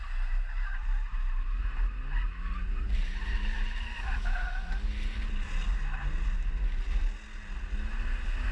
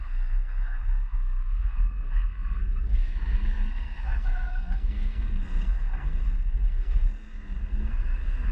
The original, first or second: first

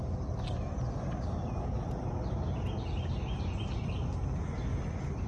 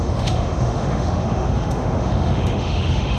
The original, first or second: first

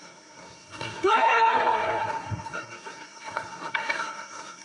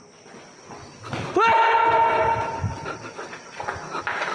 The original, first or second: second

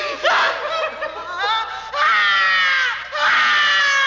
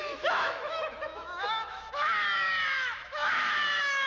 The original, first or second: first